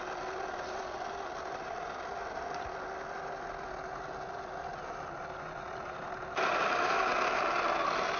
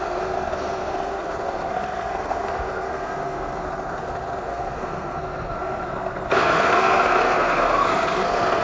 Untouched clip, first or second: first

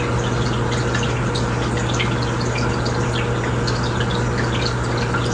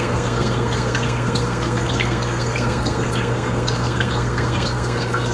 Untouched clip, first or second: first